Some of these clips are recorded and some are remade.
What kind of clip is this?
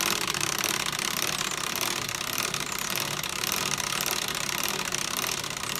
recorded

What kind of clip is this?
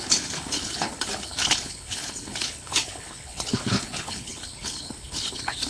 remade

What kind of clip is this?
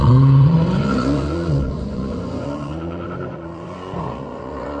remade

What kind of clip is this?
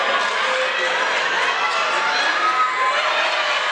recorded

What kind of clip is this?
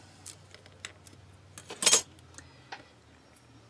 recorded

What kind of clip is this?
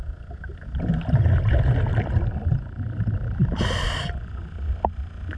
recorded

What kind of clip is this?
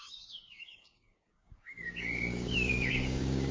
remade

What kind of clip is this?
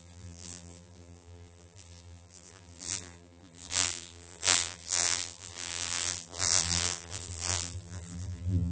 remade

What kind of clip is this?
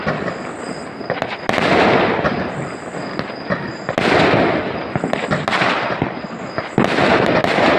recorded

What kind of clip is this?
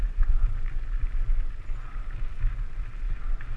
recorded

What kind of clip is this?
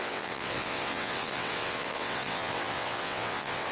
remade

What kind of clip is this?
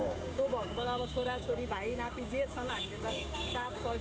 remade